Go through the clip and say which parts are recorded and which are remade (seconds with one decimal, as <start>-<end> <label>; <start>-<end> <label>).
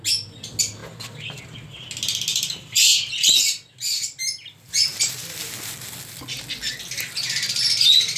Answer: 0.0-2.3 recorded; 2.3-3.3 remade; 3.3-8.2 recorded